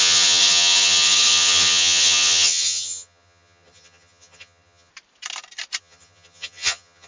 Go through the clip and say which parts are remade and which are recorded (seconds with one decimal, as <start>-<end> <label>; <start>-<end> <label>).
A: 0.0-4.9 remade; 4.9-5.8 recorded; 5.8-7.1 remade